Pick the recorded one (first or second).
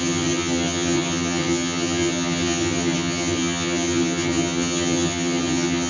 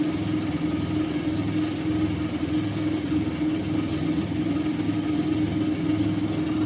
second